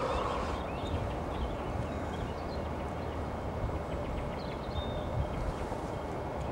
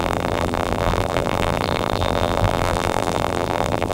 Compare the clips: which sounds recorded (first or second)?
first